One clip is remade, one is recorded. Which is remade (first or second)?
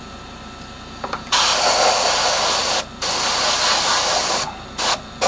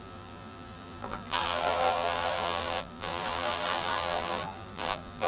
second